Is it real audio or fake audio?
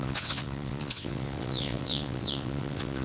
fake